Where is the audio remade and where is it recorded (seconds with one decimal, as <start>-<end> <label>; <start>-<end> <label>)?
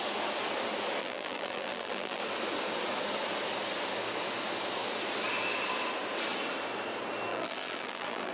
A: 0.0-1.0 recorded; 1.0-2.2 remade; 2.2-7.3 recorded; 7.3-8.3 remade